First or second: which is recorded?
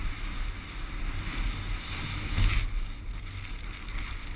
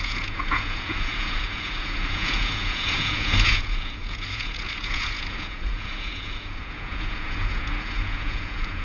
first